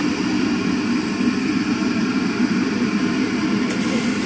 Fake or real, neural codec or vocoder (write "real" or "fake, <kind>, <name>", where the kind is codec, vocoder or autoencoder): real